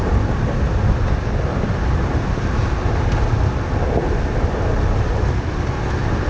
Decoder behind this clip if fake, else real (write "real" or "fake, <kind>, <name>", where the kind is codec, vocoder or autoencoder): real